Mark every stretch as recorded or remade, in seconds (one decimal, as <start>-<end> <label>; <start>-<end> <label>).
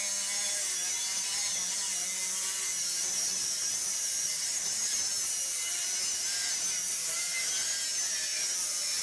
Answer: 0.0-3.0 recorded; 3.0-5.1 remade; 5.1-9.0 recorded